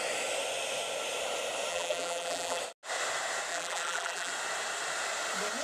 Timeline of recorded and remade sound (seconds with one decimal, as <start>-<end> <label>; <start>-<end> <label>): 0.0-1.7 recorded; 1.7-2.6 remade; 2.6-3.5 recorded; 3.5-4.3 remade; 4.3-5.6 recorded